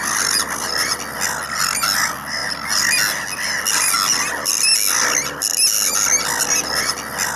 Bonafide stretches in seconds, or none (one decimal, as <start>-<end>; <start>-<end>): 0.0-7.4